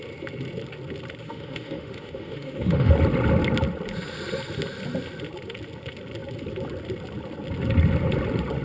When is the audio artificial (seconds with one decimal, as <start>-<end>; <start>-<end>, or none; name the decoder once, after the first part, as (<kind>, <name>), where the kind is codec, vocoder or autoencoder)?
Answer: 1.2-2.9 (autoencoder, DAC-VAE)